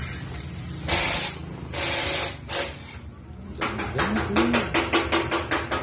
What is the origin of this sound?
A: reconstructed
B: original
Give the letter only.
B